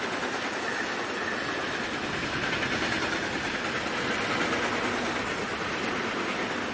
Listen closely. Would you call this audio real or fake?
real